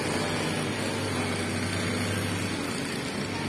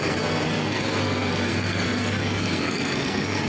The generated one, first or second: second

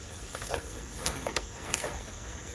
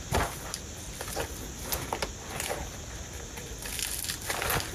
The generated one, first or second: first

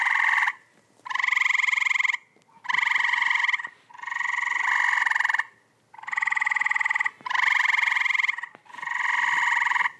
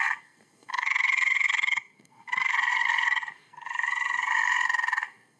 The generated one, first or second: second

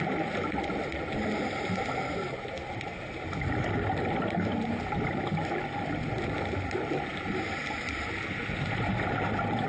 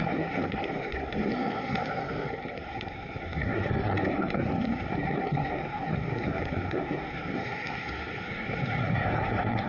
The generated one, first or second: second